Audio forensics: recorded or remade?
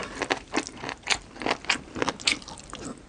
recorded